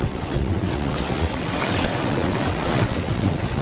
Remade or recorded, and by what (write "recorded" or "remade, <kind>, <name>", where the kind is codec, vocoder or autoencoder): remade, vocoder, WaveNeXt